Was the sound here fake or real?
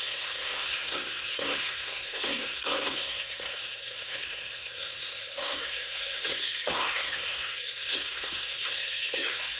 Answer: fake